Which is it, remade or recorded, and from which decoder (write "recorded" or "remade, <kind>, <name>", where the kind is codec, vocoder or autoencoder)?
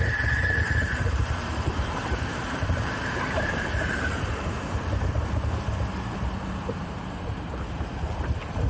remade, vocoder, BigVGAN v2